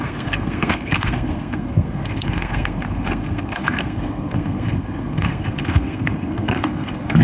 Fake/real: fake